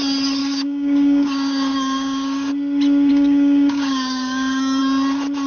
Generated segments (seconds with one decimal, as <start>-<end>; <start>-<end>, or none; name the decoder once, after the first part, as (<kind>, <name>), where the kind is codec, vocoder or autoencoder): 0.4-2.5 (codec, DAC); 3.1-4.8